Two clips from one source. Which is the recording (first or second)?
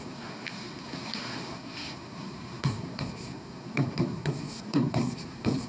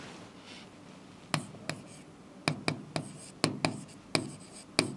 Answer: second